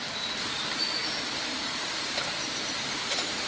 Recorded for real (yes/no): yes